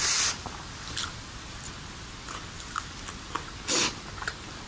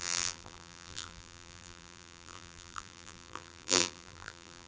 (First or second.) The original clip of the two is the first